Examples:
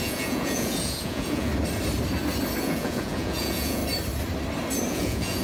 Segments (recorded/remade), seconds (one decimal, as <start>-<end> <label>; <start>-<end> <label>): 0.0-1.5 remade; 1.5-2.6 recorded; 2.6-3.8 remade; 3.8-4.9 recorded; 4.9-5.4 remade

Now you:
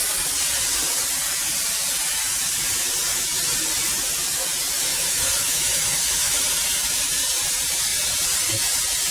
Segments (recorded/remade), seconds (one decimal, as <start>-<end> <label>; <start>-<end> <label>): 0.0-4.9 recorded; 4.9-6.4 remade; 6.4-9.1 recorded

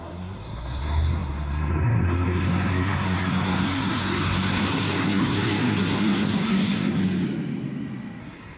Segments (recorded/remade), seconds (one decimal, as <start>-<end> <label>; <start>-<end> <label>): 0.0-7.0 remade; 7.0-8.2 recorded; 8.2-8.6 remade

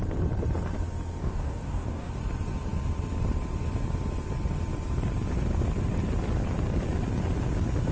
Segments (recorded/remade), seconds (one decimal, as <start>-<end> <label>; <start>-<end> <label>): 0.0-1.2 recorded; 1.2-2.1 remade; 2.1-7.9 recorded

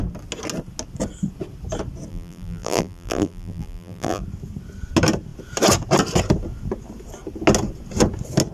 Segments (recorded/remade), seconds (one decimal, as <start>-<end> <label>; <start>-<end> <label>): 0.0-2.1 recorded; 2.1-4.2 remade; 4.2-8.5 recorded